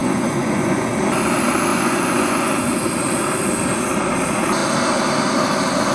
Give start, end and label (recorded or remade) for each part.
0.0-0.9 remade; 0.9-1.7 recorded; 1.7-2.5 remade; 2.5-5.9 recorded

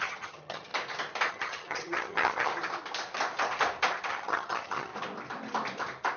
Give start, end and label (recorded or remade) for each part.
0.0-0.7 remade; 0.7-1.3 recorded; 1.3-2.5 remade; 2.5-4.1 recorded; 4.1-4.9 remade; 4.9-6.2 recorded

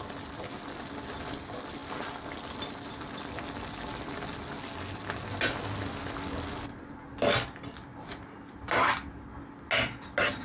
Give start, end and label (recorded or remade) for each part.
0.0-10.4 recorded

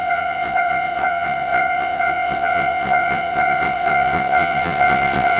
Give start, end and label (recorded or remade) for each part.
0.0-5.4 remade

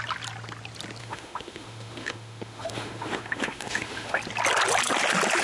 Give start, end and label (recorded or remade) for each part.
0.0-1.0 recorded; 1.0-4.2 remade; 4.2-5.4 recorded